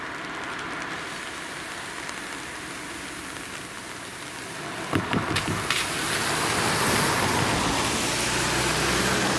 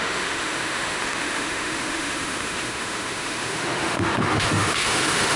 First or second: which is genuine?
first